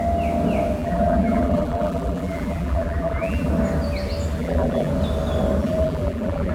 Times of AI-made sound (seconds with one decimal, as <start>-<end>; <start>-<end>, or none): 0.8-3.5; 4.4-4.9; 5.6-6.5